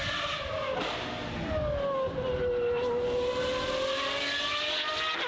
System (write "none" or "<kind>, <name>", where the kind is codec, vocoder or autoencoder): none